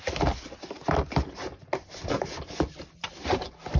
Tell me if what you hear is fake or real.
real